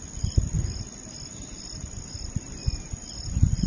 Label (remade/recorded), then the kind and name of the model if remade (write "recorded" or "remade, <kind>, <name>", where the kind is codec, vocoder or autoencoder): recorded